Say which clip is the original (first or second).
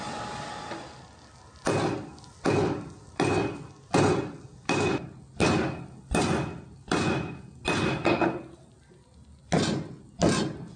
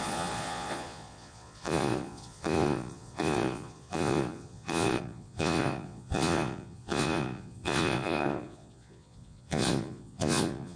first